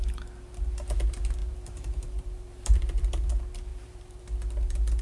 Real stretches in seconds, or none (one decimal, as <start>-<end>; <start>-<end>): 0.0-1.4; 2.8-3.7; 4.2-5.0